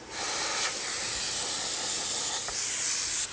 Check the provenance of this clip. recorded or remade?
recorded